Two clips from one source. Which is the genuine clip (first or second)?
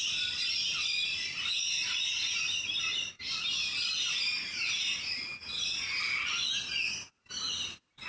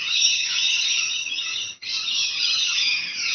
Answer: first